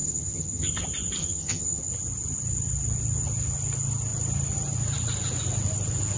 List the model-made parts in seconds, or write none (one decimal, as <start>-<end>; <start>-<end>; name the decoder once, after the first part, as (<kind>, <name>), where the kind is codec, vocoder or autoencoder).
0.0-0.7 (vocoder, HiFi-GAN); 1.2-1.9